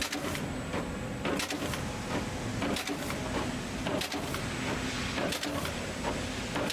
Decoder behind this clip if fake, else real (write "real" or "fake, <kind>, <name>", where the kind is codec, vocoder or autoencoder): real